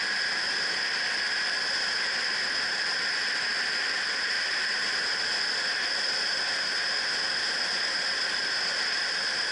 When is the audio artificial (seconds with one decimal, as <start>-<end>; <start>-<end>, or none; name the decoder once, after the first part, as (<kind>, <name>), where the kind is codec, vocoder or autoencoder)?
none